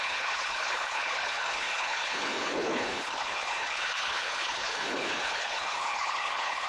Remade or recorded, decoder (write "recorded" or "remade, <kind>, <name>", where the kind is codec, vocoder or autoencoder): remade, codec, HILCodec